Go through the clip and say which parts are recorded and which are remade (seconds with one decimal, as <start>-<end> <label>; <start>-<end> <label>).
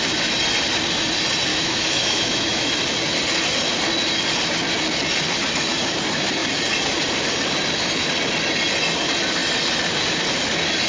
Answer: 0.0-1.5 recorded; 1.5-2.7 remade; 2.7-10.9 recorded